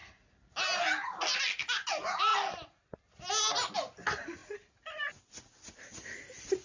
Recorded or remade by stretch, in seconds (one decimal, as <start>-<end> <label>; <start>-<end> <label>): 0.0-6.6 recorded